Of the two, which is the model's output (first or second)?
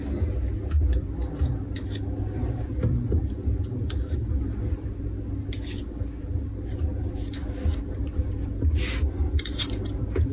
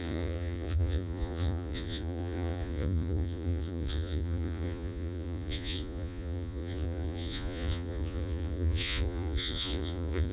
second